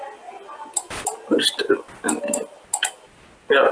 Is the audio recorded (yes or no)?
yes